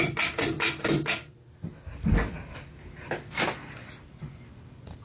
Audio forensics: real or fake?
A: real